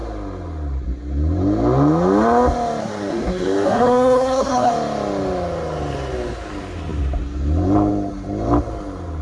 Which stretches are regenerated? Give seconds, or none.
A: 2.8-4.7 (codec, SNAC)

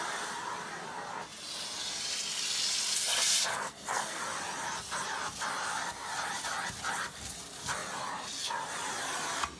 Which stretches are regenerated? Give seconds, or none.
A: 3.5-4.2 (codec, SNAC)

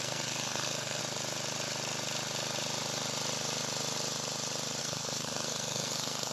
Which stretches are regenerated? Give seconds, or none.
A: 0.0-1.0 (codec, SNAC); 4.8-6.3